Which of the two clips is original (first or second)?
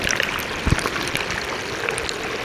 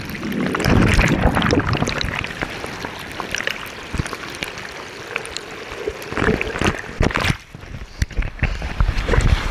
first